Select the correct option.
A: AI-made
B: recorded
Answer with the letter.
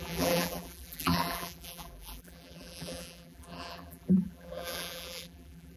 A